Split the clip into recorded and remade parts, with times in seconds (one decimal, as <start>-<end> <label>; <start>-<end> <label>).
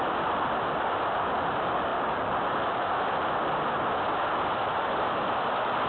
0.0-5.9 recorded